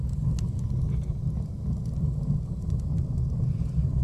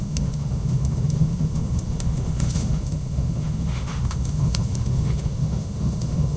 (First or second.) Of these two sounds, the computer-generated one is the second